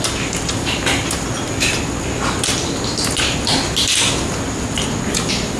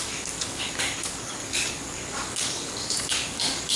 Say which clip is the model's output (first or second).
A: second